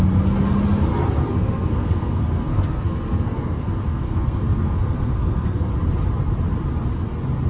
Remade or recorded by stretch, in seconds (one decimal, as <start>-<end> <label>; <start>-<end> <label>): 0.0-1.2 recorded; 1.2-5.7 remade; 5.7-7.5 recorded